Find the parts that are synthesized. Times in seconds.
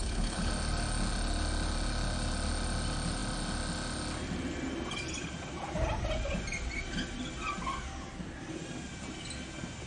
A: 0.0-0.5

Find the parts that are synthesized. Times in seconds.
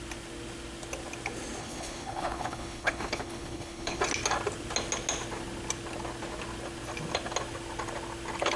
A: 1.6-4.0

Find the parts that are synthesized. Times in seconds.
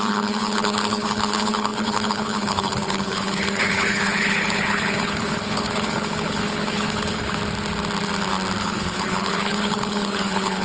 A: 0.0-7.4; 8.6-10.6